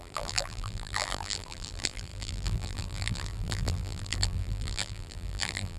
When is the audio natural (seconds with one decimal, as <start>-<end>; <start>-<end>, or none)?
none